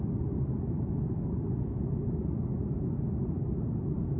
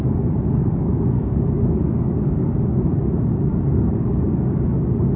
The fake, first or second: second